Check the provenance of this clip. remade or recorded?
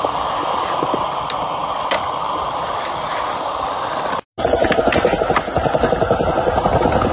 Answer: recorded